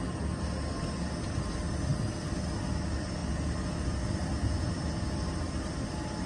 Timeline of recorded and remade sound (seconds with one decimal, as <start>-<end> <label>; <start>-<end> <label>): 0.0-6.3 recorded